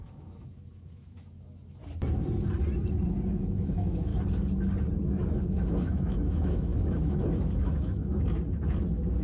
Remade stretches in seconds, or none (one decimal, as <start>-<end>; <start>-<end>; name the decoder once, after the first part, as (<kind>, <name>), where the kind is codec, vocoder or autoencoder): 0.0-1.8 (autoencoder, DAC-VAE); 3.3-4.1; 5.1-8.0